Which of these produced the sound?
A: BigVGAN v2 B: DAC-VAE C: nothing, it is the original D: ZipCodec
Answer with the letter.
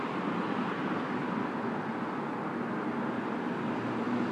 C